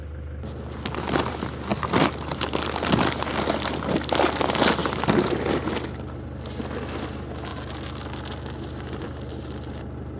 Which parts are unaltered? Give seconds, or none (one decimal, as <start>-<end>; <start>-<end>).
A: 0.0-10.2